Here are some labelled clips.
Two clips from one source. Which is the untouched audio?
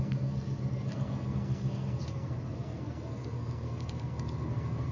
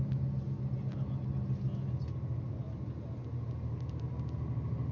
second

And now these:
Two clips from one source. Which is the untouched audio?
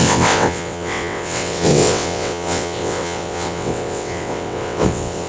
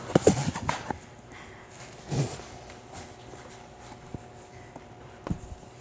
second